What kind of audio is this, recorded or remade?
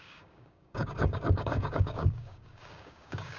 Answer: remade